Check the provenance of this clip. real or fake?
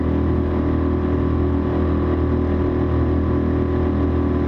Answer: real